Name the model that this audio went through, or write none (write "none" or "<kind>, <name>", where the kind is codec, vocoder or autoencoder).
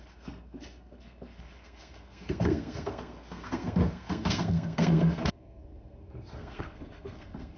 codec, SNAC